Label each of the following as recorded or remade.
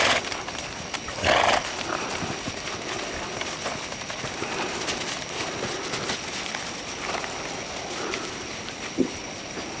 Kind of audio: recorded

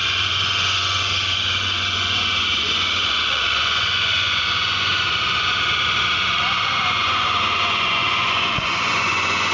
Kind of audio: remade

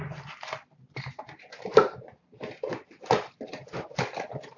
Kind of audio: remade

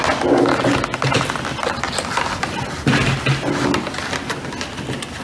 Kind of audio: recorded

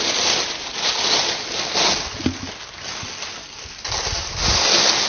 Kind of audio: recorded